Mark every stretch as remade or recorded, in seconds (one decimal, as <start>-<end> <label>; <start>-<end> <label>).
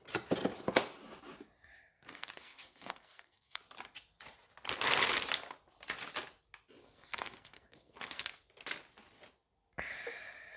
0.0-1.9 recorded; 1.9-3.6 remade; 3.6-6.8 recorded; 6.8-8.4 remade; 8.4-10.6 recorded